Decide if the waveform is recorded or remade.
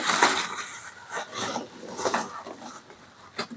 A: recorded